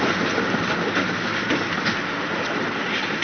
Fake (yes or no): no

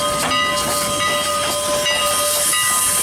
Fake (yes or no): no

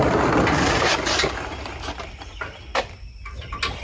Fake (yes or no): no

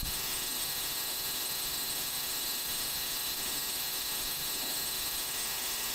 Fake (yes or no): yes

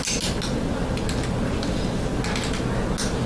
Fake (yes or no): no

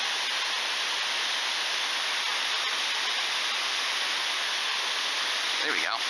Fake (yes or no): no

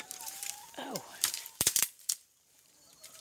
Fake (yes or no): yes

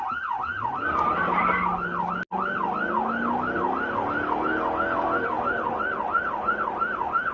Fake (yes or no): no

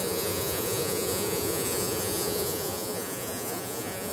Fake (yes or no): yes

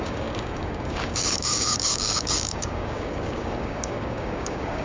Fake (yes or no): yes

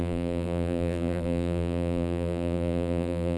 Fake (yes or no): yes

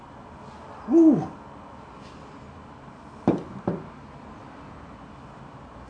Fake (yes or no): no